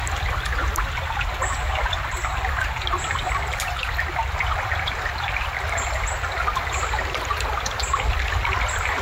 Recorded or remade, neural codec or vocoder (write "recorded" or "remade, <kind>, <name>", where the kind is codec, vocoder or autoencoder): recorded